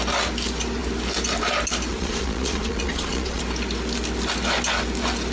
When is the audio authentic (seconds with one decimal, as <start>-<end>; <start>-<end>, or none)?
0.0-1.9; 3.4-5.3